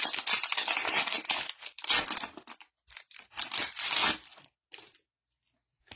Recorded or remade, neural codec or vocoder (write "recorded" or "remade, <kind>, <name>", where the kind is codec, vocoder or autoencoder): recorded